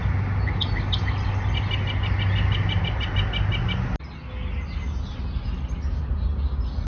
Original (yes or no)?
yes